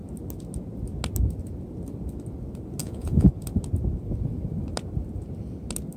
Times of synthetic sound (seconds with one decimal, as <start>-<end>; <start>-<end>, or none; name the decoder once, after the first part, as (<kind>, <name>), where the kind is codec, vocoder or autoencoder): 2.8-3.3 (vocoder, Vocos)